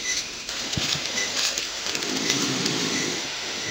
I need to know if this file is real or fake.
fake